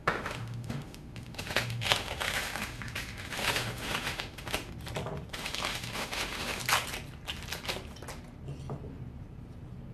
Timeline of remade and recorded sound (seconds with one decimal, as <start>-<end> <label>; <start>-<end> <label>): 0.0-4.7 remade; 4.7-5.3 recorded; 5.3-6.6 remade; 6.6-9.9 recorded